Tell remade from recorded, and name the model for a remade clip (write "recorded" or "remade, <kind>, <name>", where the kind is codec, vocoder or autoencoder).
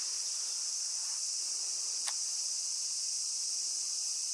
remade, vocoder, BigVGAN v2